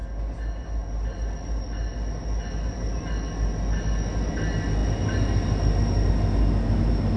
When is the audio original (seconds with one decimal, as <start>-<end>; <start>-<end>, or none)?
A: 0.0-7.2